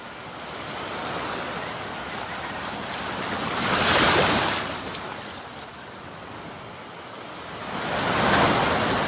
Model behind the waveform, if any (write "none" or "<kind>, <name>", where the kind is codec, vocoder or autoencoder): none